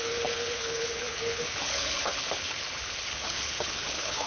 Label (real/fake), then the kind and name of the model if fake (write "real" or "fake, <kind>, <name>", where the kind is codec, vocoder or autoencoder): fake, codec, HILCodec